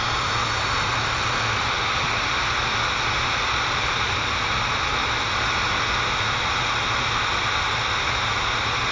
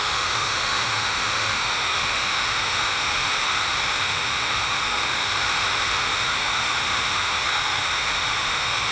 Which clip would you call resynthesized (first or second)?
second